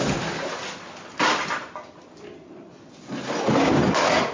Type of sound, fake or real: fake